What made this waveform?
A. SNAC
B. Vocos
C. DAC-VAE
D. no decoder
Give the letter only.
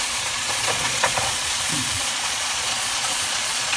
B